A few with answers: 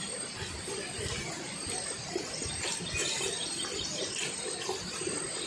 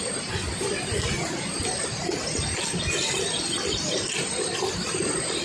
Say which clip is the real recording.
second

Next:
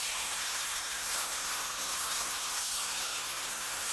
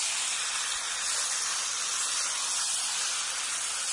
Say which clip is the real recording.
second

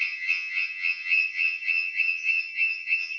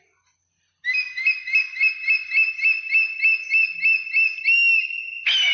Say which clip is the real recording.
second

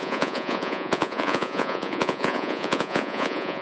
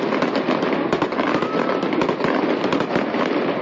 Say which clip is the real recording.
second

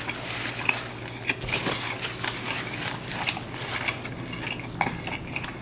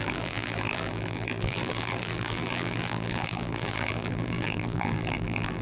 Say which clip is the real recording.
first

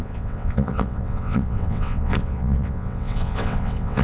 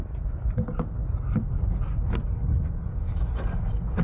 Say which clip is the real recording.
second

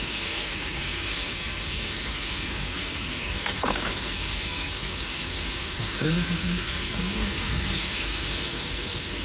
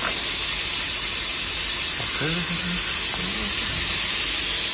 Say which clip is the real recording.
second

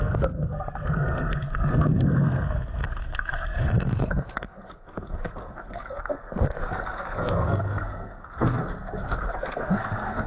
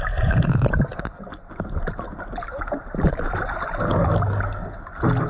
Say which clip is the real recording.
second